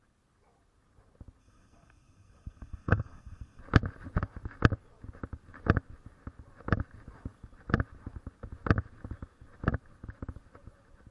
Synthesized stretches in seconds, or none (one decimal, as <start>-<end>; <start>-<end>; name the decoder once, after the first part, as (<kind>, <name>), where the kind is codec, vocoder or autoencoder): 1.4-3.6 (codec, SNAC)